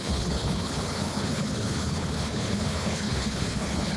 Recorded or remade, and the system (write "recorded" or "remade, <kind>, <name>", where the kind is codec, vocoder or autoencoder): remade, codec, HILCodec